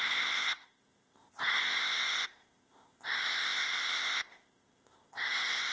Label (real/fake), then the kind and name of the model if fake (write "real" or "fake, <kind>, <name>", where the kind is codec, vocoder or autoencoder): fake, codec, ZipCodec